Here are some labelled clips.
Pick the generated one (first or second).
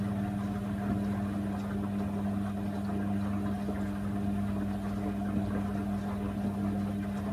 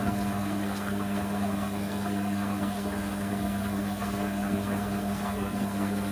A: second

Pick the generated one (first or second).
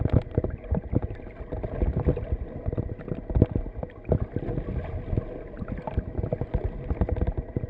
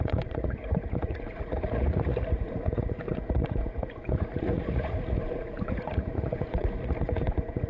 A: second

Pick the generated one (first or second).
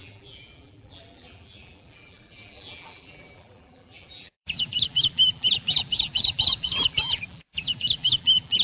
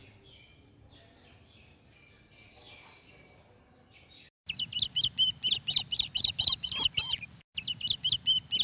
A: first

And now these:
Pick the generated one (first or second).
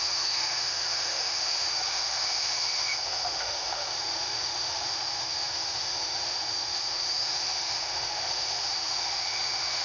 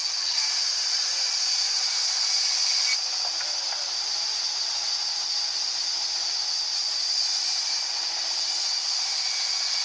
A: first